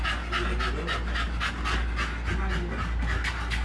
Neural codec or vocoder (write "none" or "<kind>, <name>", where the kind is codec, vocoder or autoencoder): none